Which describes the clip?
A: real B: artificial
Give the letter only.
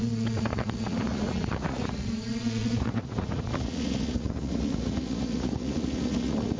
B